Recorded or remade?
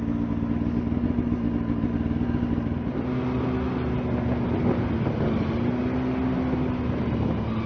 recorded